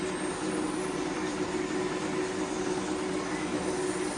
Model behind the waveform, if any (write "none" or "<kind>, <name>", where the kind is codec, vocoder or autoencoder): none